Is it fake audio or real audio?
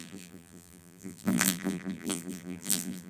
fake